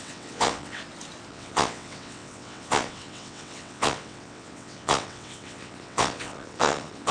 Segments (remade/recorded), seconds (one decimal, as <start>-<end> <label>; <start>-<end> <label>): 0.0-0.8 remade; 0.8-1.3 recorded; 1.3-7.1 remade